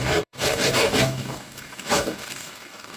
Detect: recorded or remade remade